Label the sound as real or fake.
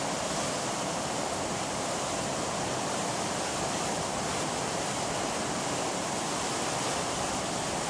real